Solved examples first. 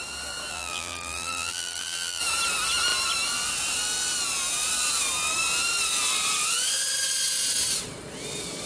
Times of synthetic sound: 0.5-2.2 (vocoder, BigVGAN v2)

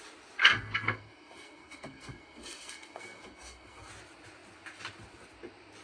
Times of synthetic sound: 0.4-3.9 (codec, SNAC)

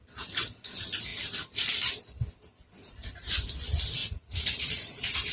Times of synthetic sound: 2.8-3.5 (vocoder, Vocos); 4.0-5.3

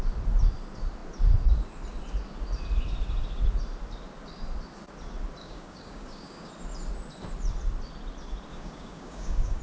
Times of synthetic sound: 5.4-6.5 (codec, DAC); 8.5-9.6

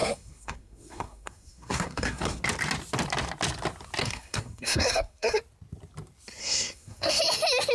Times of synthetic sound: 0.0-2.4 (codec, SNAC); 4.0-5.4; 6.4-7.2

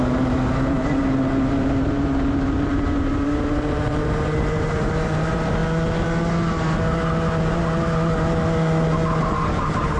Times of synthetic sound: 0.0-5.6 (vocoder, BigVGAN v2); 9.2-10.0

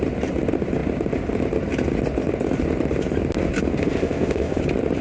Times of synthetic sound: 3.8-4.6 (codec, ZipCodec)